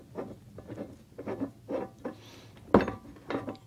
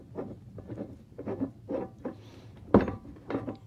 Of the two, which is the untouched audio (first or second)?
first